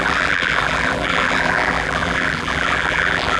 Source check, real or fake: fake